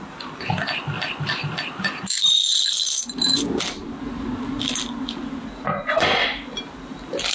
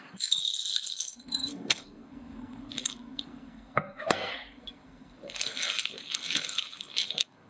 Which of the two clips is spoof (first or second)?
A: second